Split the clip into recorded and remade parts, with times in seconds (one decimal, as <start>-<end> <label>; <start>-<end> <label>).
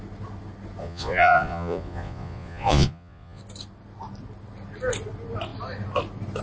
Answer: 0.0-0.8 recorded; 0.8-3.4 remade; 3.4-6.4 recorded